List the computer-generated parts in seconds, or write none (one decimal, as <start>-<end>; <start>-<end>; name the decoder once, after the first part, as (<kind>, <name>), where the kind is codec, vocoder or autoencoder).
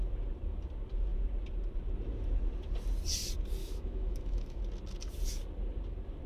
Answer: 3.6-4.6 (autoencoder, DAC-VAE)